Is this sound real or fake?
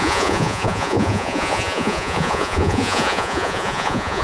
fake